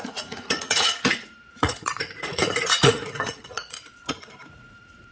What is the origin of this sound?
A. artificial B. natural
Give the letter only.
A